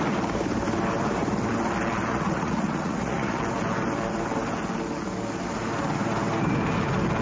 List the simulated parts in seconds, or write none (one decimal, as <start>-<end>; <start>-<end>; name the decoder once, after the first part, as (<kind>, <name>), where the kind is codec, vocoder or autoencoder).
2.1-3.4 (vocoder, Vocos)